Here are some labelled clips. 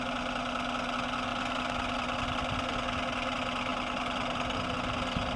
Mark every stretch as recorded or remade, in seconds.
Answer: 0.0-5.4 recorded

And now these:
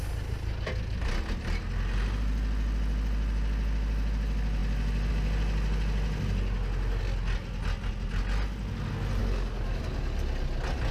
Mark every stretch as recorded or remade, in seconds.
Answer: 0.0-9.2 recorded; 9.2-9.8 remade; 9.8-10.9 recorded

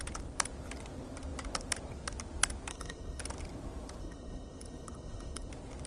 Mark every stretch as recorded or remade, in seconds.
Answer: 0.0-2.7 recorded; 2.7-3.2 remade; 3.2-4.0 recorded; 4.0-5.5 remade; 5.5-5.9 recorded